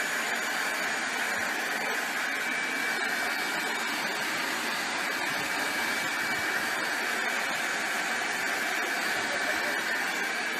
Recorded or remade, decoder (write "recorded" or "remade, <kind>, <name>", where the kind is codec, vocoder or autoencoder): recorded